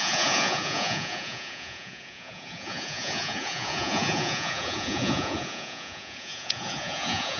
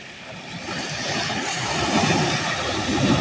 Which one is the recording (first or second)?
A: second